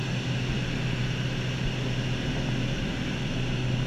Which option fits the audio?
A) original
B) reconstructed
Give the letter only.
A